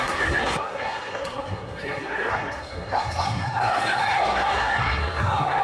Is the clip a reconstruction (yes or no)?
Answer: yes